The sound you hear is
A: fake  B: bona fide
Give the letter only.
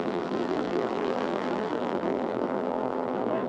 A